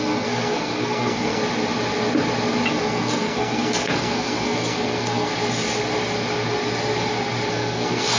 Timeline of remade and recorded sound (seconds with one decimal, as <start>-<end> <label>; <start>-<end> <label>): 0.0-1.4 remade; 1.4-2.7 recorded; 2.7-5.3 remade; 5.3-7.5 recorded; 7.5-8.2 remade